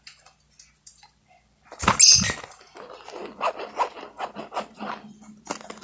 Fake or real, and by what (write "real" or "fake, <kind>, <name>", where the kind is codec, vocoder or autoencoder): real